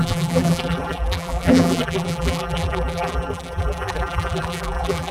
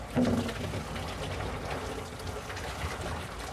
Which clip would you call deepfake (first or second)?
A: first